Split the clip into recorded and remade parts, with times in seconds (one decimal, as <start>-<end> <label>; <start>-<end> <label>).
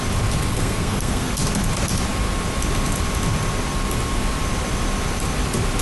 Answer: 0.0-0.5 recorded; 0.5-1.3 remade; 1.3-5.8 recorded